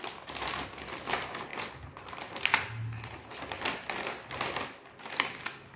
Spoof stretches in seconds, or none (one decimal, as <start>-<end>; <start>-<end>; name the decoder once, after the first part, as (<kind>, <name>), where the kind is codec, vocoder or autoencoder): none